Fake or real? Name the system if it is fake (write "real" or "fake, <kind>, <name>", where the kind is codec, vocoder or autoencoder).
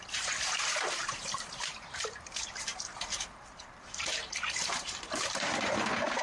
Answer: fake, vocoder, BigVGAN v2